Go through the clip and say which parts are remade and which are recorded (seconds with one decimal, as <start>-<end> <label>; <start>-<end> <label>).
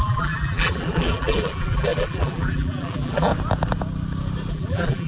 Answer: 0.0-3.3 remade; 3.3-4.5 recorded; 4.5-5.1 remade